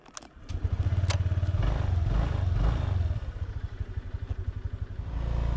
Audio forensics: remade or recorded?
recorded